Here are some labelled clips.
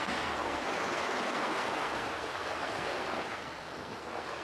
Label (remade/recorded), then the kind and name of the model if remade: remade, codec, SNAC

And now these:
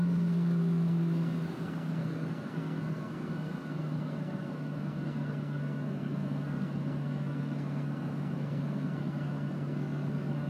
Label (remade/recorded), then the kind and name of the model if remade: remade, codec, SNAC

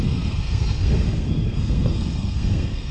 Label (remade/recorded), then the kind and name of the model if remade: remade, codec, SNAC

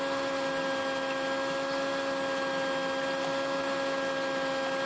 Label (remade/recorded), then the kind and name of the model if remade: recorded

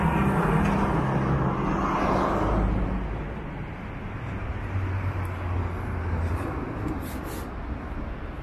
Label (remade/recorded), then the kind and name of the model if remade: recorded